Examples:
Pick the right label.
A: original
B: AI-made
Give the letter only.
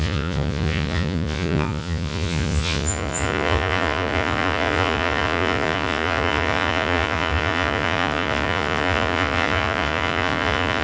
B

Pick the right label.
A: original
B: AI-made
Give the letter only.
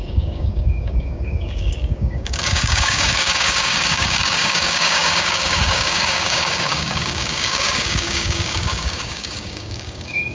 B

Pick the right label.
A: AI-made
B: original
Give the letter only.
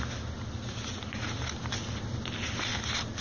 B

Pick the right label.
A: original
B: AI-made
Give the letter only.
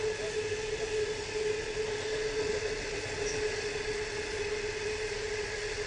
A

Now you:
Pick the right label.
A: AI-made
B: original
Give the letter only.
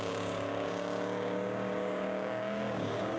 A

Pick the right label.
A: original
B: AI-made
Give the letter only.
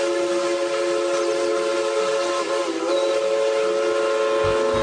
A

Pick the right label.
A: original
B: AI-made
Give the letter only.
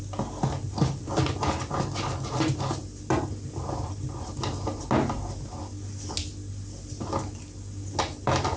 A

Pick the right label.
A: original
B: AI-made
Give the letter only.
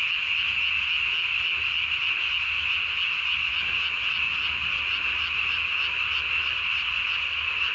A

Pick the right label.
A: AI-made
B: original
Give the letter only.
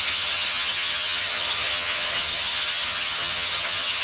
A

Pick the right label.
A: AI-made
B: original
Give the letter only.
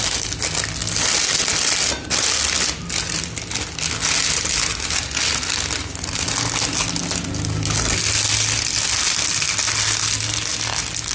B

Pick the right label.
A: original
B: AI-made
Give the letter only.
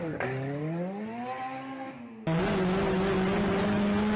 A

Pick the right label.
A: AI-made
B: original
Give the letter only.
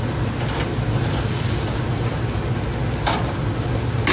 B